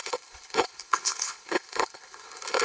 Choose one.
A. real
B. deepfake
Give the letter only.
B